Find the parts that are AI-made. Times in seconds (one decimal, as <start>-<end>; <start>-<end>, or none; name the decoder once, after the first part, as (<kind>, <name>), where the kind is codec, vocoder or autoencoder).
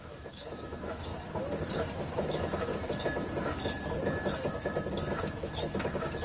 0.0-1.1 (autoencoder, DAC-VAE); 2.1-2.7; 5.2-6.2